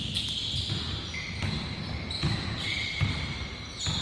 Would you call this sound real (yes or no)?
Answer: yes